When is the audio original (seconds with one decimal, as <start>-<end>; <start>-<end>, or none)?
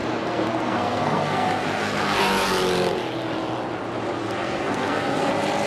2.2-4.2; 5.3-5.7